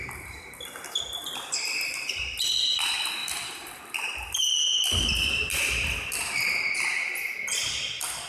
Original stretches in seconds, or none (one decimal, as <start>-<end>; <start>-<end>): 0.0-3.2; 3.8-8.3